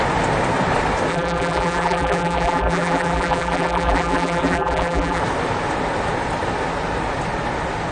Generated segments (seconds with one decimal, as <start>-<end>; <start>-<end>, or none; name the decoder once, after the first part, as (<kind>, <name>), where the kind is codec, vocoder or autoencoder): 1.1-5.2 (vocoder, BigVGAN v2)